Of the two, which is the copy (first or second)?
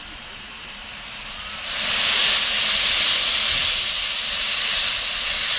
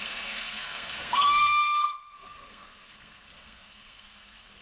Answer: second